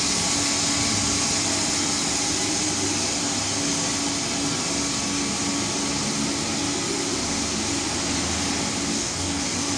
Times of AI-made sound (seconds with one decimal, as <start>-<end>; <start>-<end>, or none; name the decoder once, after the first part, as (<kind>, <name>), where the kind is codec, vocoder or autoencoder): 8.9-9.4 (codec, DAC)